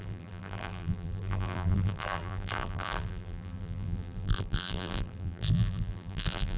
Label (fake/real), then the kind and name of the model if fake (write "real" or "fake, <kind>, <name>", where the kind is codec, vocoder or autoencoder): fake, vocoder, BigVGAN v2